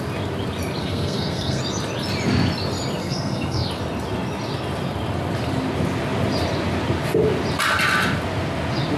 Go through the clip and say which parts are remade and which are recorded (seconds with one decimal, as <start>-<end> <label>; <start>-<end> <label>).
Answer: 0.0-0.8 recorded; 0.8-1.6 remade; 1.6-3.0 recorded; 3.0-3.7 remade; 3.7-9.0 recorded